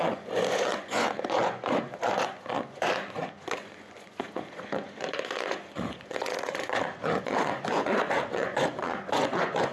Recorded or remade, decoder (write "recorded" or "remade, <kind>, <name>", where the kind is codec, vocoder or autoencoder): remade, vocoder, Vocos